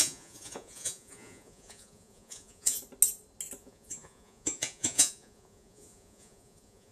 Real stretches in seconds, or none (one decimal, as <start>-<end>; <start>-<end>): 2.8-3.6